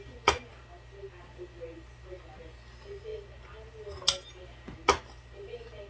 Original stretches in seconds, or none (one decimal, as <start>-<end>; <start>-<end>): 0.0-5.9